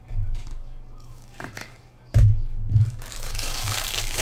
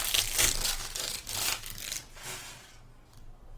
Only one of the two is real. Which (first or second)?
second